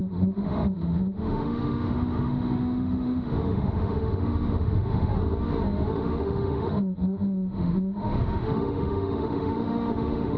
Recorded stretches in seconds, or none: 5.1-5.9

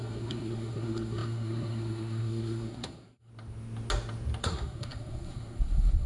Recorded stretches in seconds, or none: 3.3-4.4